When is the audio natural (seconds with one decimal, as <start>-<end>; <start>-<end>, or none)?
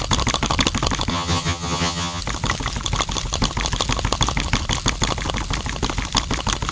0.0-1.1; 2.2-6.7